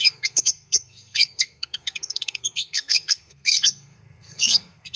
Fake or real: fake